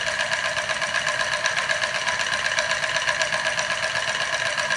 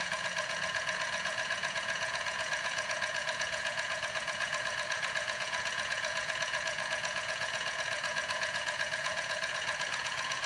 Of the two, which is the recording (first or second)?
first